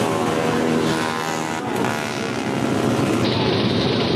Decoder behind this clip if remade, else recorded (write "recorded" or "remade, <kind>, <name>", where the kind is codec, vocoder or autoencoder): recorded